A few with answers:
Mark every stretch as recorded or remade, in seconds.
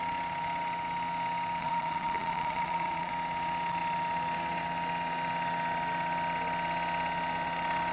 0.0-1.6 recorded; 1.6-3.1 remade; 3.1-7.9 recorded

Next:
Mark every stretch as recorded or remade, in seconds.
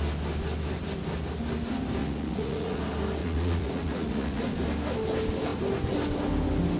0.0-2.0 recorded; 2.0-2.8 remade; 2.8-3.2 recorded; 3.2-4.4 remade; 4.4-6.8 recorded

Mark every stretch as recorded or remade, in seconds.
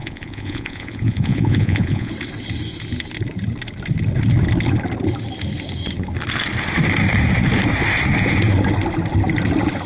0.0-2.1 remade; 2.1-9.9 recorded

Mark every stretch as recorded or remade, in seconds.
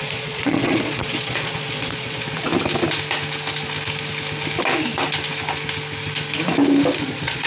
0.0-2.5 remade; 2.5-7.0 recorded; 7.0-7.5 remade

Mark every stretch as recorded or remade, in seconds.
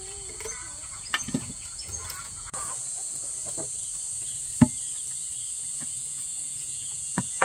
0.0-3.2 remade; 3.2-5.7 recorded; 5.7-7.4 remade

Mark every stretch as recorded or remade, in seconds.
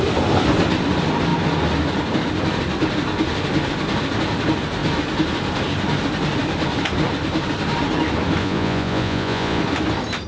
0.0-8.4 recorded; 8.4-9.6 remade; 9.6-10.3 recorded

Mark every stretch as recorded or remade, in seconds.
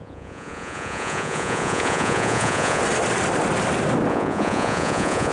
0.0-2.8 remade; 2.8-4.1 recorded; 4.1-5.3 remade